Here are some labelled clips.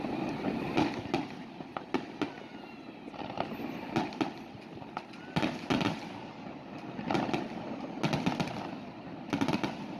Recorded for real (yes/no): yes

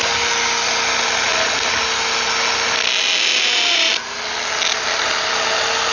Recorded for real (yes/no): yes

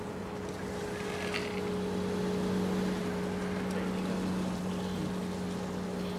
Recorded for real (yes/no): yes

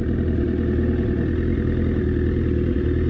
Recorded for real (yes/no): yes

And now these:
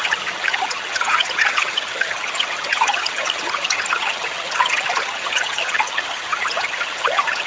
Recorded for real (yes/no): no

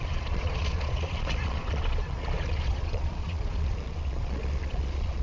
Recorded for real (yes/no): no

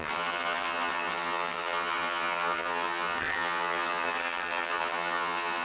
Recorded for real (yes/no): no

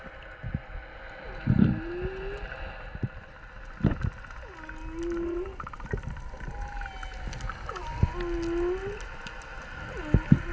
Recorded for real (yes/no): yes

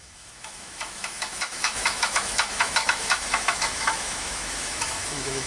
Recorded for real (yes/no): no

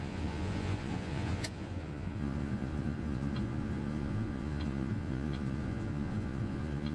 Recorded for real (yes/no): no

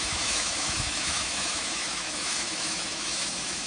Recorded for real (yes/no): no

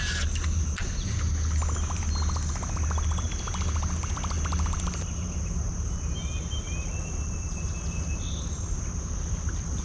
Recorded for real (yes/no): yes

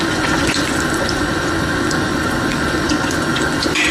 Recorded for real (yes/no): no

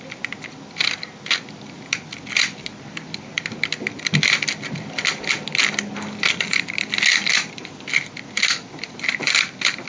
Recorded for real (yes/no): yes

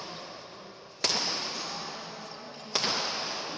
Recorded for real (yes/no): yes